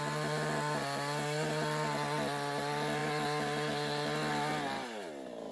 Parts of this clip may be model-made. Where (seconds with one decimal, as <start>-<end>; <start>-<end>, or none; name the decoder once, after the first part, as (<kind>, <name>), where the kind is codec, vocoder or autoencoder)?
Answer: none